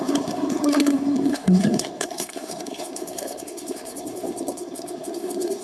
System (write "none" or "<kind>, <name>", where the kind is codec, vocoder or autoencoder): codec, SNAC